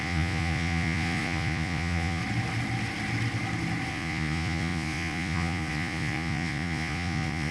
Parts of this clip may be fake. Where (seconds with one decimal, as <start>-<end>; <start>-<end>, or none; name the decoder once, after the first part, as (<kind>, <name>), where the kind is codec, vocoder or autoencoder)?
0.0-2.2 (vocoder, Vocos); 3.9-7.5